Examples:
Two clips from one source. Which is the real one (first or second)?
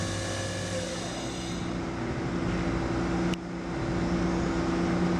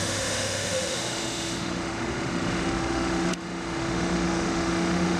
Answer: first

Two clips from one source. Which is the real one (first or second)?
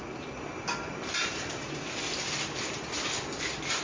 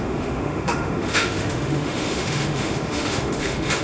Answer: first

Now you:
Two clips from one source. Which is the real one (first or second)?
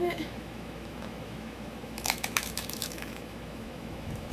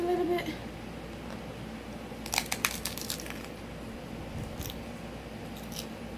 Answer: second